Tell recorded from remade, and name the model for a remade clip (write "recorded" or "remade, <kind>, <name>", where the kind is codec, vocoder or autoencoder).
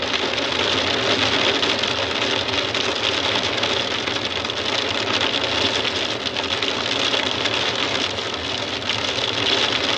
recorded